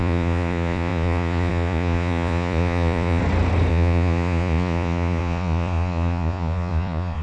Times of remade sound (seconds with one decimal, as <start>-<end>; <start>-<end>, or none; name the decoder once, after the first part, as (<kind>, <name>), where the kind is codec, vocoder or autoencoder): 0.0-3.2 (vocoder, Vocos); 3.7-7.2